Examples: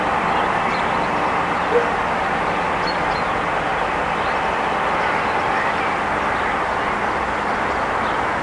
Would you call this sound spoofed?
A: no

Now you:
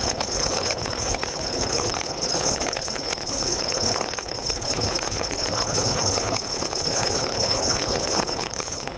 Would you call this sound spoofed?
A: yes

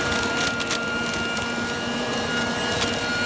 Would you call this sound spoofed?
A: no